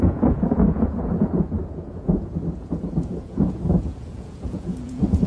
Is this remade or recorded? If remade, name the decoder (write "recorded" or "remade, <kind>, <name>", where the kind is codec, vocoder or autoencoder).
remade, vocoder, Vocos